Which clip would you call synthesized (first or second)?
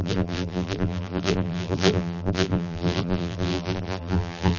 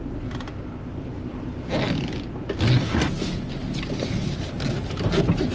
first